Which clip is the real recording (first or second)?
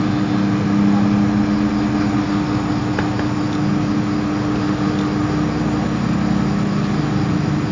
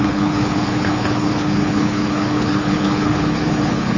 first